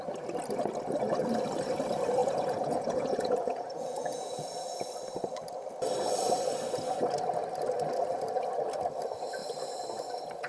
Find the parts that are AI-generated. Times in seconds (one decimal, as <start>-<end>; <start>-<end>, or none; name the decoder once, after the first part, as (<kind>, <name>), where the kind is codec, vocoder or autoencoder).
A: 2.2-4.9 (vocoder, Vocos)